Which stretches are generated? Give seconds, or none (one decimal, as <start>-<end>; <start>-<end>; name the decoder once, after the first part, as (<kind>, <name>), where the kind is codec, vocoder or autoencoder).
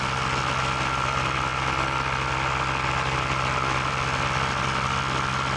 none